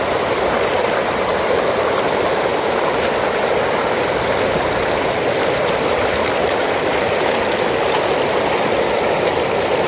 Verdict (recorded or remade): recorded